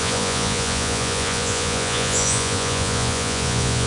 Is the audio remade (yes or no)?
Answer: yes